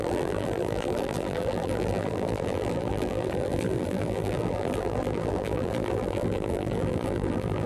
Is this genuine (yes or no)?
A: no